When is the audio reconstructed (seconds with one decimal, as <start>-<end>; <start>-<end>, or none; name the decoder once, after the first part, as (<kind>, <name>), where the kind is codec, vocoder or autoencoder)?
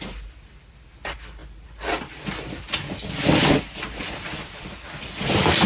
none